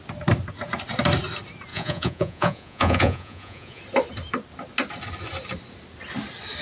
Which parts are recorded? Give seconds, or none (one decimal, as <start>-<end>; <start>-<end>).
0.0-1.7; 3.8-6.6